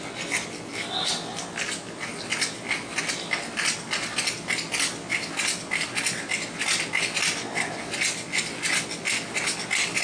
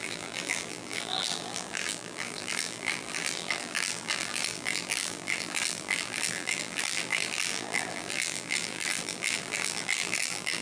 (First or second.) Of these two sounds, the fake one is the second